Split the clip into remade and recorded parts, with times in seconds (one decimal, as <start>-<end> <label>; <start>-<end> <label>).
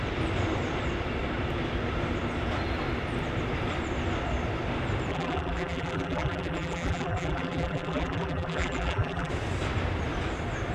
0.0-5.1 recorded; 5.1-9.3 remade; 9.3-10.7 recorded